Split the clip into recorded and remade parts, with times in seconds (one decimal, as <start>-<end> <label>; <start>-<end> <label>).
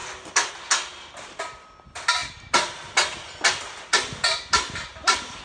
0.0-5.4 recorded